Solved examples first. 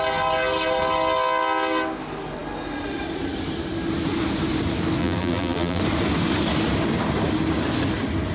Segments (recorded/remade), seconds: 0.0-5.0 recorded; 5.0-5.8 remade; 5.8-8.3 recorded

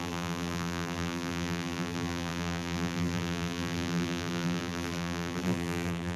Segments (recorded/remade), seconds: 0.0-6.2 remade

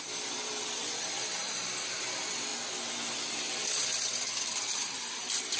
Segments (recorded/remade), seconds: 0.0-1.4 recorded; 1.4-2.0 remade; 2.0-5.6 recorded

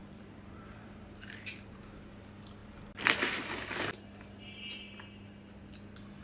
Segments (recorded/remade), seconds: 0.0-2.2 remade; 2.2-6.2 recorded

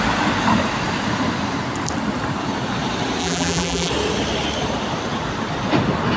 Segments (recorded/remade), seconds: 0.0-3.2 recorded; 3.2-3.9 remade; 3.9-6.2 recorded